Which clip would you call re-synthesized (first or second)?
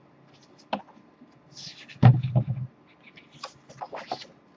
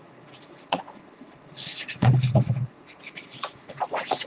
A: second